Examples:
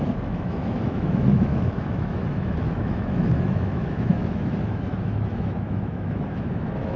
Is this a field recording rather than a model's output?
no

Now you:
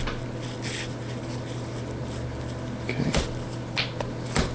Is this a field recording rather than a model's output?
yes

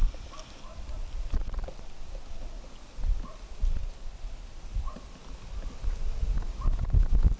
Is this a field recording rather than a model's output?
yes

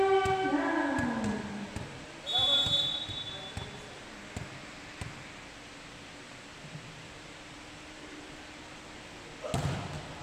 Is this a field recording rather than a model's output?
yes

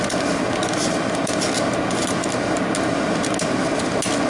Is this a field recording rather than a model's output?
yes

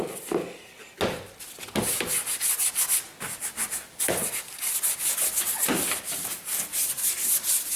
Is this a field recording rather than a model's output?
yes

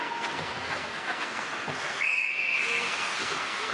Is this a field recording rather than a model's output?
no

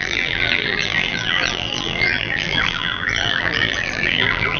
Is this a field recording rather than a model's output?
no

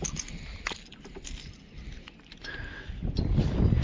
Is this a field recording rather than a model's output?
yes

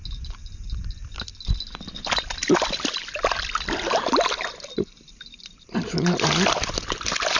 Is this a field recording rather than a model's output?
yes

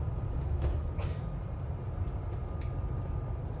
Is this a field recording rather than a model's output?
yes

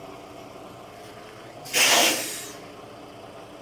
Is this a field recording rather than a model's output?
yes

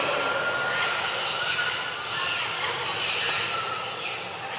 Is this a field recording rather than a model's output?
yes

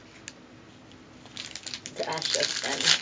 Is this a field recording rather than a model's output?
yes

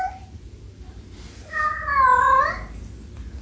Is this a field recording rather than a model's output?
yes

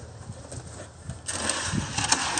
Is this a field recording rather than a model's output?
yes